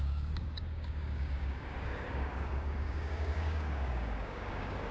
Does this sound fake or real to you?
fake